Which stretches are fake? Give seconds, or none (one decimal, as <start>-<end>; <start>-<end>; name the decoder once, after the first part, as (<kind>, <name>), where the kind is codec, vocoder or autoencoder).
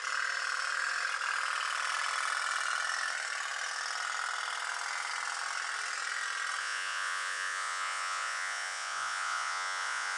6.6-10.2 (vocoder, Vocos)